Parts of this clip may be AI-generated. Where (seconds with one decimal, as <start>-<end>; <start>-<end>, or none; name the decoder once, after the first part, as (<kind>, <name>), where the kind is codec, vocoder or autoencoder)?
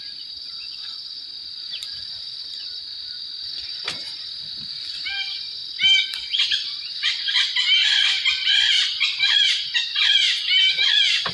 0.0-11.3 (vocoder, BigVGAN v2)